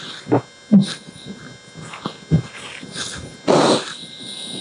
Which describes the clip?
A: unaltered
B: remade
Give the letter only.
A